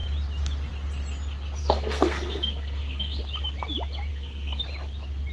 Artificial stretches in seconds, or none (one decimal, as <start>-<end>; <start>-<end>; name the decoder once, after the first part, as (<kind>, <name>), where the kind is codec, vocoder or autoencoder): 1.6-3.2 (codec, SNAC); 4.1-4.6